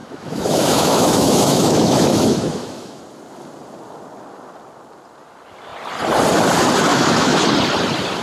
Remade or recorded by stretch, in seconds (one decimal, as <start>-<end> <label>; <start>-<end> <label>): 0.0-3.0 remade; 3.0-6.9 recorded; 6.9-7.4 remade; 7.4-8.2 recorded